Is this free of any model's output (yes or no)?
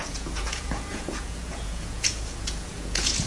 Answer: no